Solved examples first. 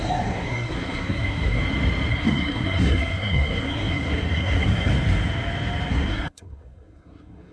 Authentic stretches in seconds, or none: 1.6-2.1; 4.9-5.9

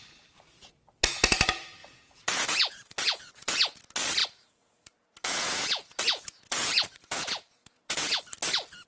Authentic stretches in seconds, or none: 0.0-1.8; 3.8-4.2; 8.2-8.9

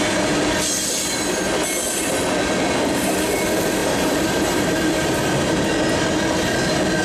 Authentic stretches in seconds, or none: 0.0-3.8; 4.8-7.0

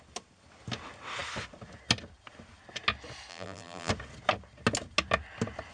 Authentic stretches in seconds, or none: 0.0-3.3; 3.9-5.7

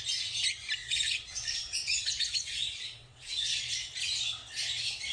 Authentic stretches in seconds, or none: 0.0-0.8; 3.9-5.1

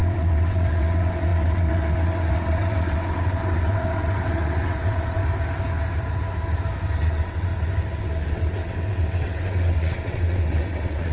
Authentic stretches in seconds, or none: 5.2-7.0; 7.5-8.0

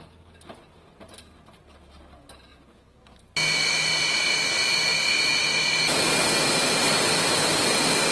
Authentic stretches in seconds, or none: 0.0-8.1

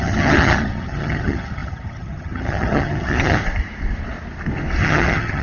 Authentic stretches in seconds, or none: 3.4-4.8